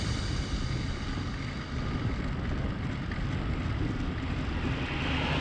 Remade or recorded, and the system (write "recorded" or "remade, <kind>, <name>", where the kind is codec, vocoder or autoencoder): recorded